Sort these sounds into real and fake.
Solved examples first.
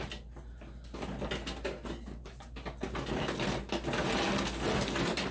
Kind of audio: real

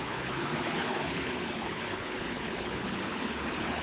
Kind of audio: fake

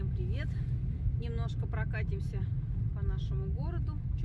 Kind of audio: real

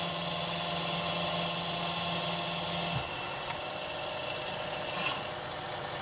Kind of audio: real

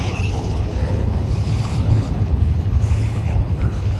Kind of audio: fake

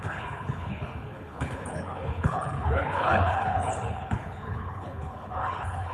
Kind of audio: fake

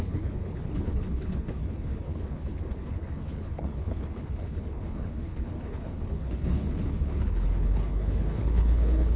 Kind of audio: fake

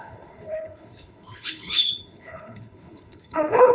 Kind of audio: fake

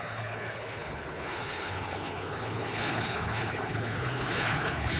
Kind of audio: fake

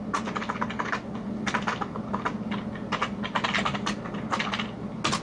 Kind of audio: real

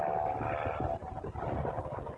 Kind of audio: real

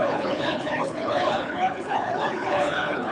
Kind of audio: fake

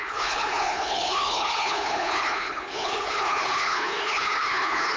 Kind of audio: fake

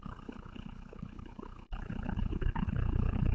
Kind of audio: fake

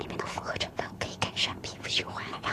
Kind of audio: fake